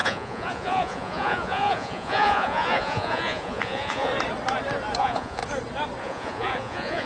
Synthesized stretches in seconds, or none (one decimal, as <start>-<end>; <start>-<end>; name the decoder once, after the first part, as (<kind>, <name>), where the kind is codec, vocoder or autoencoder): 0.0-4.1 (vocoder, Vocos); 5.0-5.4; 6.0-7.1